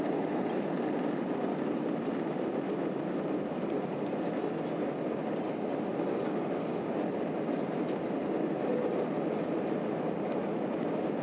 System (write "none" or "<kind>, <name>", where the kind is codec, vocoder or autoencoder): none